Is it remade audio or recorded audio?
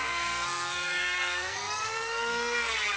remade